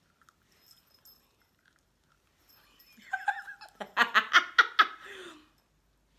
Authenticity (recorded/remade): recorded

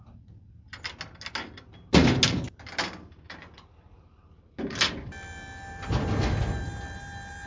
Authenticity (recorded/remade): recorded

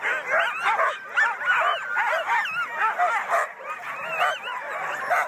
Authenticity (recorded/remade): recorded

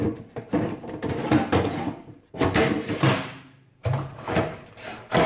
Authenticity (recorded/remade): remade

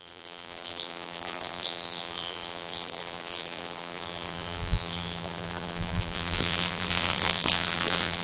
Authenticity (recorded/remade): remade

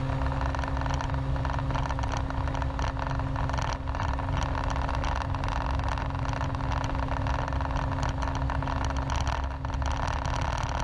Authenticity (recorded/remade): recorded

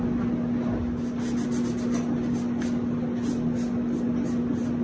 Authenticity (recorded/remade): recorded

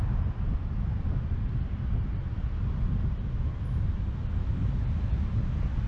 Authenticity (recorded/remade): recorded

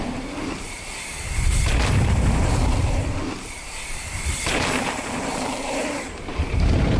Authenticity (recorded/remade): remade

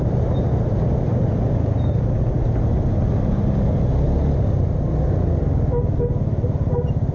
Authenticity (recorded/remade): recorded